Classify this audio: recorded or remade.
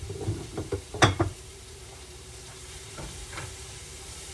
remade